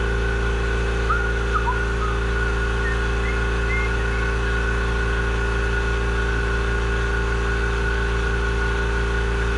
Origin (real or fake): real